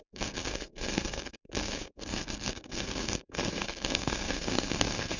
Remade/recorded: remade